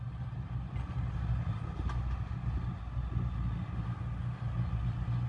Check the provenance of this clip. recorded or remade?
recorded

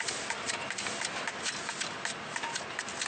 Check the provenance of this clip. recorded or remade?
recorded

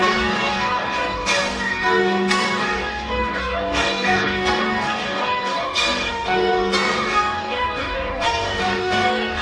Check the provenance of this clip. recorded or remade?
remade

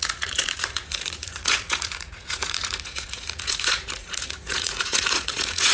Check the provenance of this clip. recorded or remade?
remade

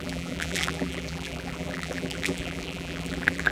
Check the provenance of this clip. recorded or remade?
remade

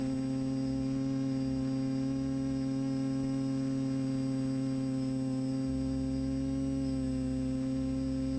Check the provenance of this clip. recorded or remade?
recorded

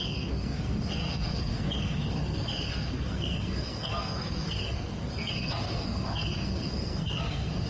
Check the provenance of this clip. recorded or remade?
remade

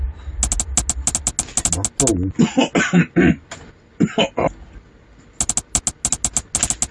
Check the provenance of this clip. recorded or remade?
recorded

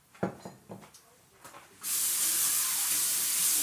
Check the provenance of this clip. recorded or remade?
recorded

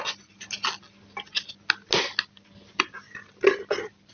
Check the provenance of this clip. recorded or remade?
recorded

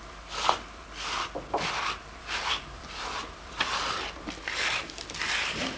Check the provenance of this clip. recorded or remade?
remade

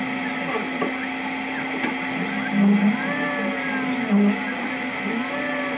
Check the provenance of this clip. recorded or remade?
recorded